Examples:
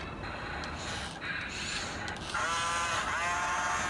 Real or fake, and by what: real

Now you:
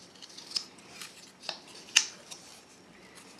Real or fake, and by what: real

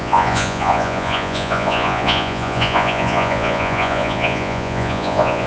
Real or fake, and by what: fake, vocoder, Vocos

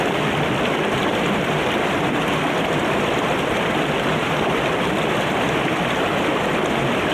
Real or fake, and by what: real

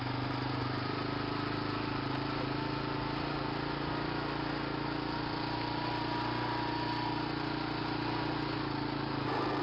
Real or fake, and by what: real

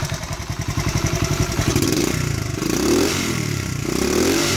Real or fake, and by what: fake, vocoder, BigVGAN v2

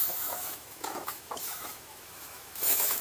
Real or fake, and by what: fake, autoencoder, DAC-VAE